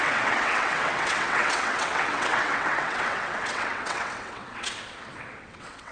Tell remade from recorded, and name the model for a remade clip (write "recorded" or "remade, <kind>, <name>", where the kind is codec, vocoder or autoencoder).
remade, vocoder, WaveNeXt